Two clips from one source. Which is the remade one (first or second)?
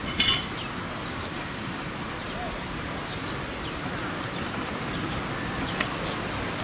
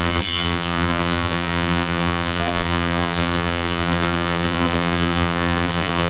second